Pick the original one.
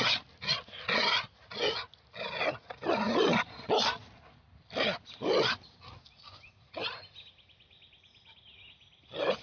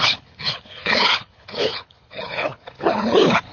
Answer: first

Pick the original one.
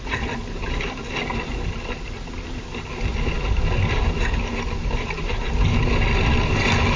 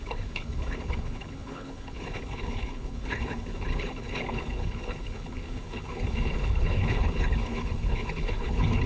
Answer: first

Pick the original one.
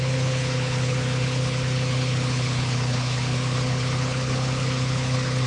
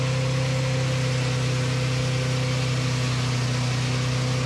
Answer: second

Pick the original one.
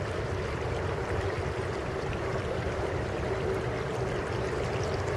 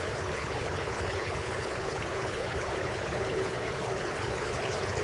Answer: first